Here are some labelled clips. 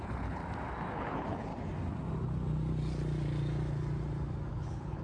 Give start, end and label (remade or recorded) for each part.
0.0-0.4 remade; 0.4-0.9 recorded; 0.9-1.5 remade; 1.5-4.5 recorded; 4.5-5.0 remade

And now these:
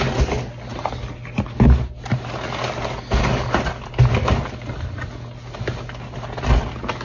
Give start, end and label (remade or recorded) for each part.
0.0-7.0 recorded

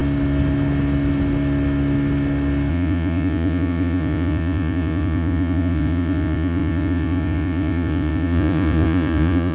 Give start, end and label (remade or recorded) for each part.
0.0-2.7 recorded; 2.7-9.5 remade